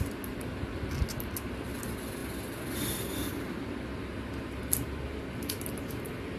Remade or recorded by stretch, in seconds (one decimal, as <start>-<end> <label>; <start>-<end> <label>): 0.0-6.4 recorded